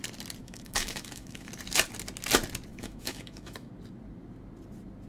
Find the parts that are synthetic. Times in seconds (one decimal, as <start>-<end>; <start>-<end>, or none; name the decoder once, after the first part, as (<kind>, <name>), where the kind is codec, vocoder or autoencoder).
0.4-1.5 (autoencoder, DAC-VAE); 2.7-3.7